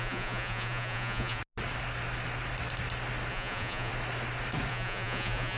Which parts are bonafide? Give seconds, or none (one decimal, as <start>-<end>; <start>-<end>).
1.4-3.3; 3.9-4.7